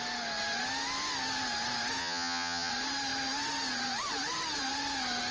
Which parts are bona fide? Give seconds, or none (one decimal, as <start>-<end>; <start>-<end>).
0.0-2.0; 2.7-5.3